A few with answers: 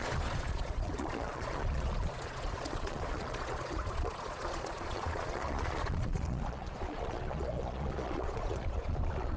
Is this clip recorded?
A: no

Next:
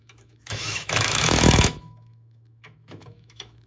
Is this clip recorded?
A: no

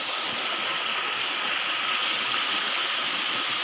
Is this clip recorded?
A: yes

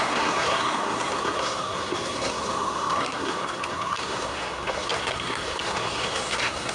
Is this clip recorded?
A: no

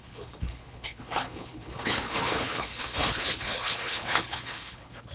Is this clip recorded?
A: no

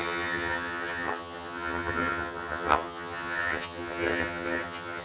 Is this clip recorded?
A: no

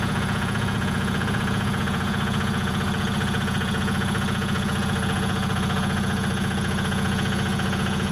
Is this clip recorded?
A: no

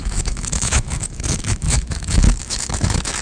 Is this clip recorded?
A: no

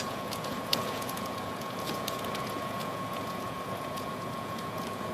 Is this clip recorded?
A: no